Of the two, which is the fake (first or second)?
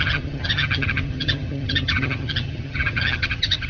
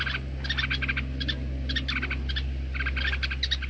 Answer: first